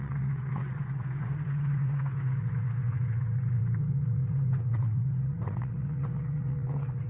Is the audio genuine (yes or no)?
no